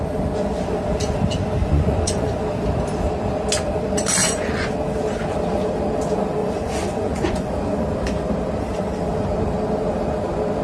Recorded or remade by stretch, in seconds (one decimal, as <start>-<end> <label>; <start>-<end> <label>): 0.0-1.6 recorded; 1.6-2.4 remade; 2.4-4.2 recorded; 4.2-4.7 remade; 4.7-6.4 recorded; 6.4-7.5 remade; 7.5-10.6 recorded